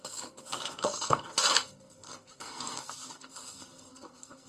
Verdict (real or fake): fake